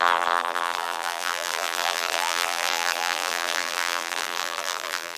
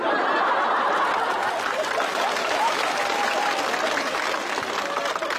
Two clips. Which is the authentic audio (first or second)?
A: second